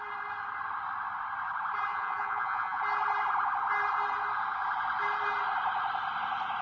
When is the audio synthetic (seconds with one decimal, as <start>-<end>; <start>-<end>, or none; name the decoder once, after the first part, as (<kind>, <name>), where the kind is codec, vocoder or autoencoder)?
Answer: 1.9-2.8 (vocoder, Vocos)